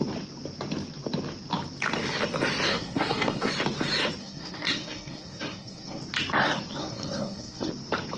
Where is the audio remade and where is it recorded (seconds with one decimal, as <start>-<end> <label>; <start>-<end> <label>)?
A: 0.0-2.7 recorded; 2.7-3.5 remade; 3.5-4.2 recorded; 4.2-6.0 remade; 6.0-6.8 recorded; 6.8-7.7 remade; 7.7-8.2 recorded

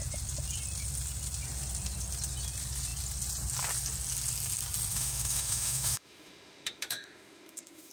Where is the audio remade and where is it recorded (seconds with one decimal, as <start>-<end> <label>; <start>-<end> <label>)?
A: 0.0-4.9 recorded; 4.9-7.9 remade

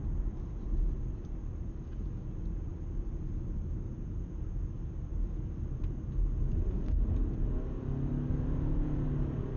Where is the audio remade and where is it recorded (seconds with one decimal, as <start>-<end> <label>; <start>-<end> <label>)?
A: 0.0-9.6 recorded

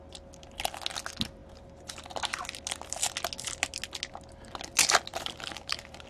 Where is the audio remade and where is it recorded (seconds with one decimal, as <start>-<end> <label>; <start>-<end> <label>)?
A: 0.0-5.1 recorded; 5.1-6.1 remade

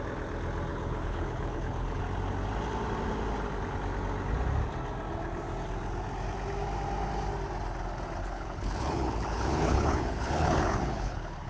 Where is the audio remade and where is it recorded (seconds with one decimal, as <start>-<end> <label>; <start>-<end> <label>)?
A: 0.0-0.7 recorded; 0.7-2.0 remade; 2.0-8.2 recorded; 8.2-11.5 remade

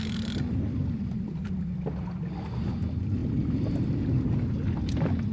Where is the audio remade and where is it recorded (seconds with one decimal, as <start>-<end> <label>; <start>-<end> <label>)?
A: 0.0-5.3 recorded

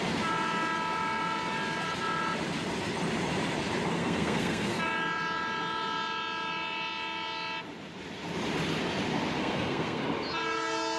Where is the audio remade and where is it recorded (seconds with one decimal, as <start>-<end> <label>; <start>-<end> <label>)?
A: 0.0-4.0 recorded; 4.0-4.8 remade; 4.8-9.4 recorded; 9.4-10.0 remade; 10.0-11.0 recorded

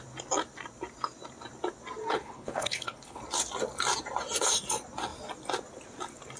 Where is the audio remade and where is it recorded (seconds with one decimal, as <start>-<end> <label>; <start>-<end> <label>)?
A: 0.0-2.1 recorded; 2.1-3.2 remade; 3.2-6.4 recorded